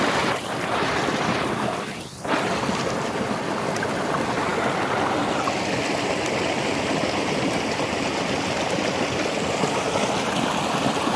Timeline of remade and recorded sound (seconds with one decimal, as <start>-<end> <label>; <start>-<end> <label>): 0.0-11.2 recorded